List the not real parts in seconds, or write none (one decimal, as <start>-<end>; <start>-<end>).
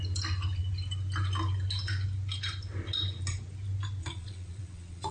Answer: 4.0-5.1